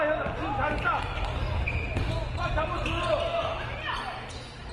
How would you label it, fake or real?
real